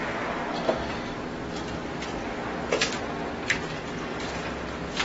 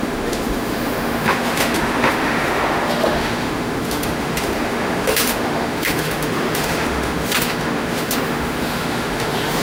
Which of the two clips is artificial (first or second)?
second